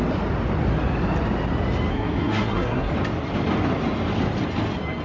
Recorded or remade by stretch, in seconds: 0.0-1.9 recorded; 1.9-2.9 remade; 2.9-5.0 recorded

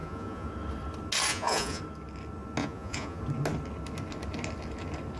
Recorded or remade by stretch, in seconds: 0.0-0.5 remade; 0.5-1.3 recorded; 1.3-1.8 remade; 1.8-2.6 recorded; 2.6-3.2 remade; 3.2-5.2 recorded

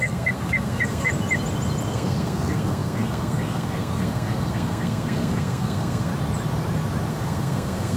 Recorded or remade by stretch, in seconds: 0.0-1.1 remade; 1.1-1.9 recorded; 1.9-6.1 remade; 6.1-7.1 recorded; 7.1-8.0 remade

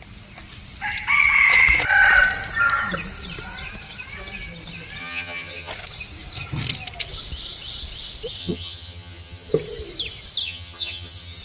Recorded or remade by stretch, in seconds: 0.0-5.0 recorded; 5.0-5.7 remade; 5.7-8.4 recorded; 8.4-9.5 remade; 9.5-10.4 recorded; 10.4-11.4 remade